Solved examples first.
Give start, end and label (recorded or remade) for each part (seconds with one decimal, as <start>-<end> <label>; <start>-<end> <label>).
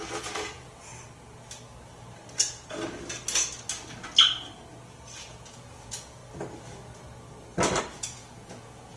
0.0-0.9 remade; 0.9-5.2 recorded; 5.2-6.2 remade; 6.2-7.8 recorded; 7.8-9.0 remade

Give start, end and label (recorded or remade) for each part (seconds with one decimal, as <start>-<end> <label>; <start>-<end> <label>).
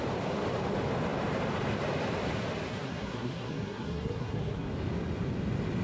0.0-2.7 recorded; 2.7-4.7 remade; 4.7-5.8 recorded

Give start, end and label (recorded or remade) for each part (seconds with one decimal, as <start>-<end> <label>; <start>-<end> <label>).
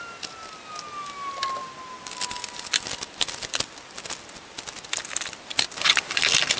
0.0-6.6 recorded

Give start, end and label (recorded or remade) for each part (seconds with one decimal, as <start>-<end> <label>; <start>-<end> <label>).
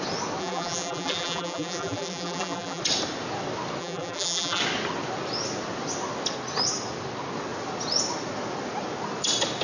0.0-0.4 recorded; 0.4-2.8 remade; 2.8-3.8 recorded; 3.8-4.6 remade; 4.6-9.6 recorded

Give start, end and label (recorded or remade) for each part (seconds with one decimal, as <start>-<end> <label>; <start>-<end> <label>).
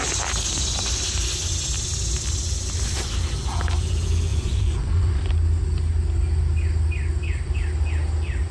0.0-4.3 recorded; 4.3-5.3 remade; 5.3-8.5 recorded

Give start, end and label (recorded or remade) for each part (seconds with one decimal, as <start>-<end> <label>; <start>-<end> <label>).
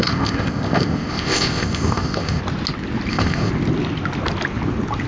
0.0-2.4 remade; 2.4-3.1 recorded; 3.1-3.5 remade; 3.5-5.1 recorded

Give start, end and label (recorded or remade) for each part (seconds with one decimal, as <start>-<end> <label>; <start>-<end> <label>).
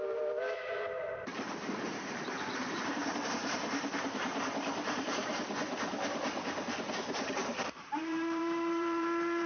0.0-5.2 remade; 5.2-7.3 recorded; 7.3-9.5 remade